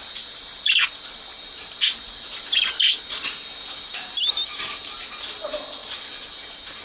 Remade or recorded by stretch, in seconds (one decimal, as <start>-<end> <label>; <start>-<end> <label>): 0.0-6.8 recorded